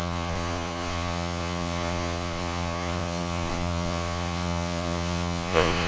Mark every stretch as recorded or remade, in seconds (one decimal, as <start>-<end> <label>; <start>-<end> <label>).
0.0-5.9 remade